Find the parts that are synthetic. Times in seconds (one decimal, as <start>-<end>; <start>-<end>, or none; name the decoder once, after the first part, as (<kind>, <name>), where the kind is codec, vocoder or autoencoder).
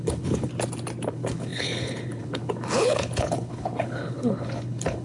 0.0-0.5 (codec, HILCodec); 1.1-5.0